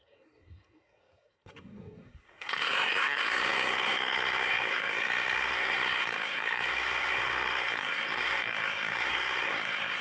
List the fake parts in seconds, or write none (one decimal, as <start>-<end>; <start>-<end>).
0.0-10.0